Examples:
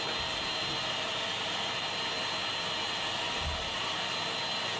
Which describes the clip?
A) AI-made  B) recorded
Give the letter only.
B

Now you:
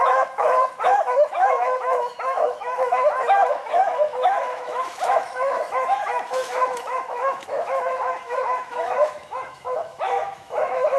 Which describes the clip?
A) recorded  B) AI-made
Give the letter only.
B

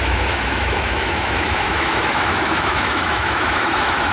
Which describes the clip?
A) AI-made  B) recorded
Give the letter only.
A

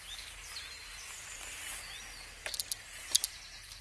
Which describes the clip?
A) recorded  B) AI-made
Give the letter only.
A